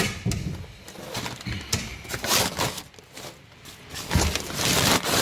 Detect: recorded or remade recorded